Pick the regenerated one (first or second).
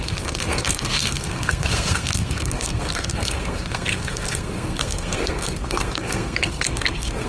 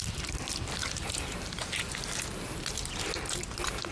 first